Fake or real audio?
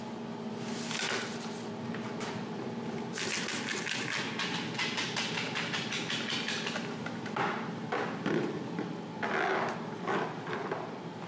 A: real